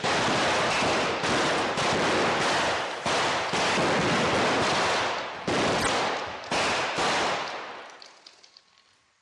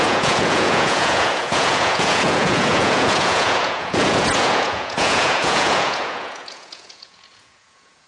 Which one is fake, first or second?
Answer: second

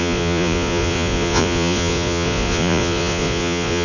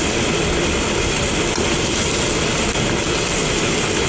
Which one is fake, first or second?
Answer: first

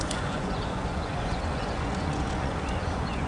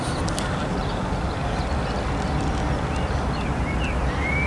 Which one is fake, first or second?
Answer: first